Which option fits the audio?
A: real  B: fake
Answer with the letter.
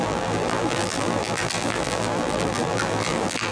B